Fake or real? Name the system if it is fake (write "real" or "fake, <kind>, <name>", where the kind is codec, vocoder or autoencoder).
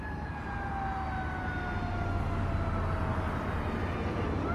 real